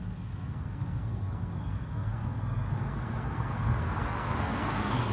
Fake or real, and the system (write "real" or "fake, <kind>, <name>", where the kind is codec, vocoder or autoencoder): fake, codec, SNAC